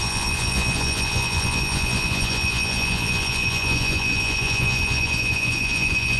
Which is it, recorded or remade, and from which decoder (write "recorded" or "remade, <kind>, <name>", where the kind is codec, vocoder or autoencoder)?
remade, vocoder, Vocos